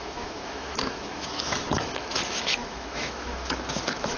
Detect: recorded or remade remade